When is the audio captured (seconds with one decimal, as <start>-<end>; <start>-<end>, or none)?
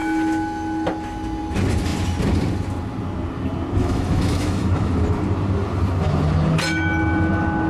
0.0-3.8; 4.9-7.7